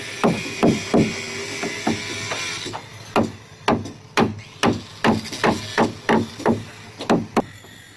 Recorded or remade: recorded